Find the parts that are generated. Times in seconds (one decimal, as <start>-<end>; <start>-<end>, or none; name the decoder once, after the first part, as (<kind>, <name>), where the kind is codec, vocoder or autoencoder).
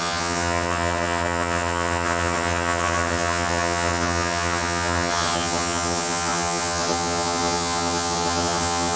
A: 0.0-9.0 (vocoder, HiFi-GAN)